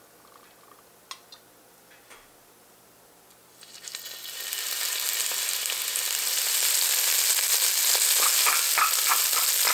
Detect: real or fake real